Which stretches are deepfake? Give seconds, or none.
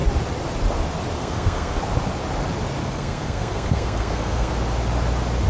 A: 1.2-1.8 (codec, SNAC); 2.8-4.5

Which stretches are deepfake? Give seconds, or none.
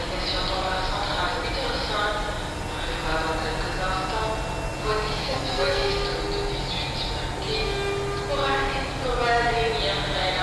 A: 5.2-5.9 (codec, SNAC)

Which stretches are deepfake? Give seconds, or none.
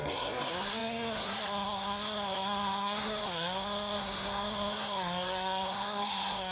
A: 0.0-6.5 (codec, SNAC)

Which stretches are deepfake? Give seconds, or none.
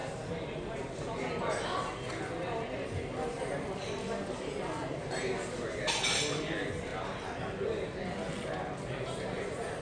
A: none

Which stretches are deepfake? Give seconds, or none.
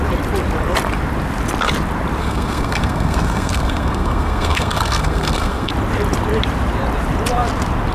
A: 2.2-5.7 (codec, SNAC)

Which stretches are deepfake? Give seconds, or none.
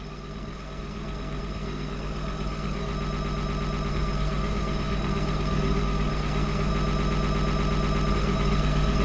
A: 0.0-2.9 (codec, SNAC); 3.9-6.7; 8.1-9.0